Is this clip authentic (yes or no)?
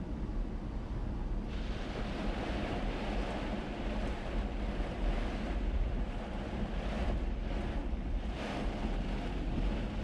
yes